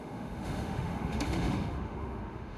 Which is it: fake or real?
fake